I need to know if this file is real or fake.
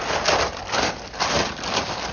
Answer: real